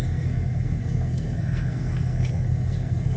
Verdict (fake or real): fake